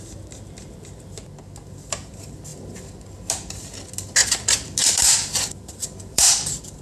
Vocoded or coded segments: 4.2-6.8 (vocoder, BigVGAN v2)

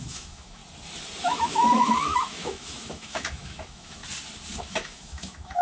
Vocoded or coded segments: 0.0-0.6 (autoencoder, DAC-VAE); 1.2-4.0; 4.6-5.6

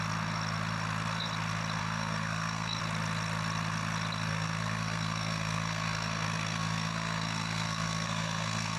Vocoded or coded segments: 1.8-2.8 (codec, SNAC); 4.3-8.8